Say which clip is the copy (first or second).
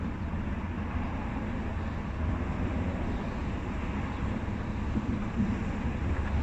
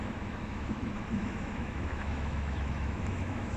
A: second